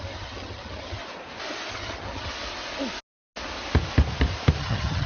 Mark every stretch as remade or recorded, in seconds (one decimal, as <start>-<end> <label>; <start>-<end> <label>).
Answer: 0.0-1.0 remade; 1.0-1.7 recorded; 1.7-2.3 remade; 2.3-4.6 recorded; 4.6-5.1 remade

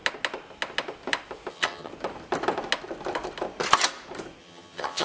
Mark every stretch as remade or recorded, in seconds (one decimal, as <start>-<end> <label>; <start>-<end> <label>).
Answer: 0.0-1.5 recorded; 1.5-1.9 remade; 1.9-4.4 recorded; 4.4-5.0 remade